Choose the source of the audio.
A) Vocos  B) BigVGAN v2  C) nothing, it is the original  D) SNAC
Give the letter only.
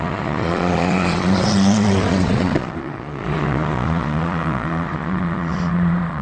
A